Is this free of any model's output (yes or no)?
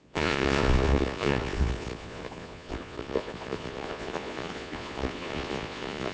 no